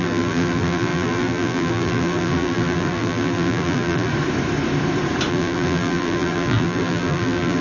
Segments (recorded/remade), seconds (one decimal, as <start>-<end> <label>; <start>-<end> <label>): 0.0-4.1 remade; 4.1-5.3 recorded; 5.3-7.6 remade